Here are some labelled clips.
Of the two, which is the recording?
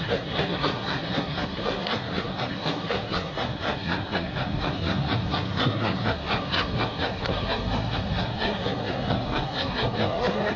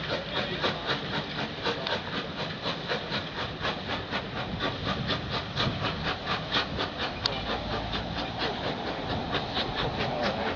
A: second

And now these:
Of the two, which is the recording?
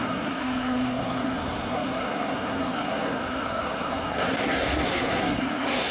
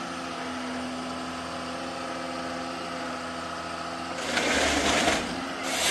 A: second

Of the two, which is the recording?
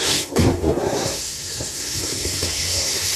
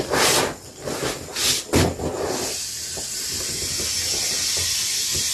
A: second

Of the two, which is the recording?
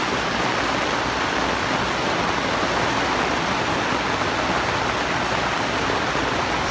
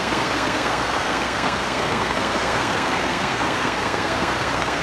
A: first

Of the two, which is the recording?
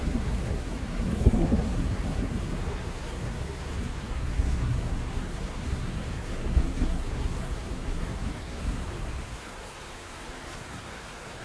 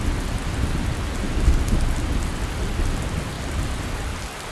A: second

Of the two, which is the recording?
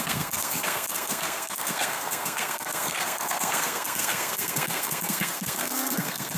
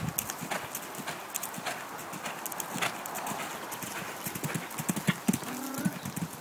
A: second